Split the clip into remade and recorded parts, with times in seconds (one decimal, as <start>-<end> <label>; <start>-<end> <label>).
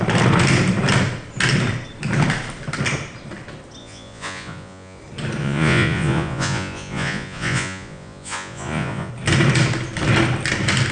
0.0-3.8 recorded; 3.8-5.0 remade; 5.0-5.4 recorded; 5.4-9.1 remade; 9.1-10.9 recorded